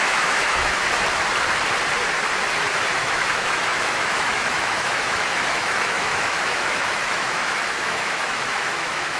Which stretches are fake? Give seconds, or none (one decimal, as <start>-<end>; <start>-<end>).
0.0-0.8; 3.0-9.2